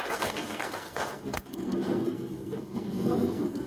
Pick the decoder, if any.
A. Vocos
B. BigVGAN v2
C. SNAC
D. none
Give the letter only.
C